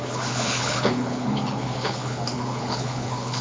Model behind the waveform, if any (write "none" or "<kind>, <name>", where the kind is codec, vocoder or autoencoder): codec, HILCodec